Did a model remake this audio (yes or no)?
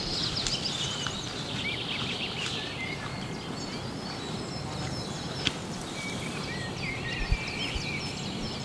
no